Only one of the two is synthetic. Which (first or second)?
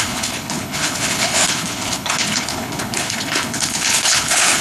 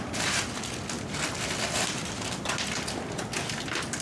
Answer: first